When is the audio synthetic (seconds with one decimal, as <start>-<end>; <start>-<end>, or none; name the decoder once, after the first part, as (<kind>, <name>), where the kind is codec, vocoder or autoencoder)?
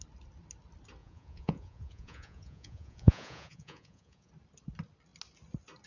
1.0-4.3 (vocoder, Vocos)